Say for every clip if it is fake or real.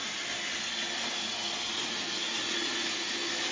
real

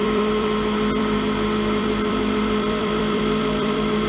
fake